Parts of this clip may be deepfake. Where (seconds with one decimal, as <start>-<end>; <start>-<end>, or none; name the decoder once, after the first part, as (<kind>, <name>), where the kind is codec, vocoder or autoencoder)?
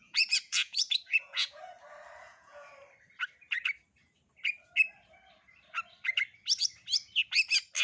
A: 0.0-1.6 (vocoder, Vocos); 2.2-2.7